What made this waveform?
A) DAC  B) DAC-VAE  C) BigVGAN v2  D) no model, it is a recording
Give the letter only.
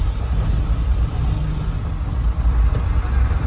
D